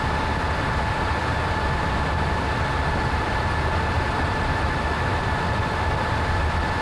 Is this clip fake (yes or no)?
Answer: yes